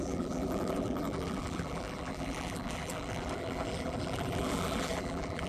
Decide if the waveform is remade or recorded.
remade